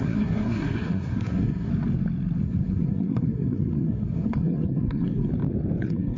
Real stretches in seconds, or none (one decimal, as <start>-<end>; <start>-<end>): 1.7-2.4; 5.3-5.8